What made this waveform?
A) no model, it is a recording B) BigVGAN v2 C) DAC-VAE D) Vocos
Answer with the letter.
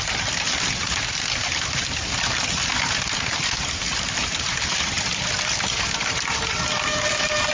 A